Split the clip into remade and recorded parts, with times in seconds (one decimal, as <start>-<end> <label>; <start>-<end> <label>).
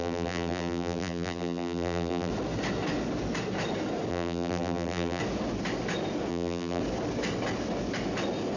0.0-2.3 remade; 2.3-4.1 recorded; 4.1-5.2 remade; 5.2-6.3 recorded; 6.3-6.8 remade; 6.8-8.6 recorded